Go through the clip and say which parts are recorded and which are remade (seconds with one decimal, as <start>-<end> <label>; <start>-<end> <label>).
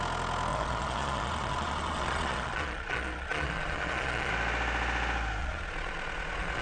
0.0-0.5 recorded; 0.5-4.3 remade; 4.3-5.4 recorded; 5.4-6.6 remade